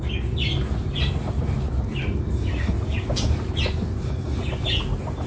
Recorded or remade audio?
recorded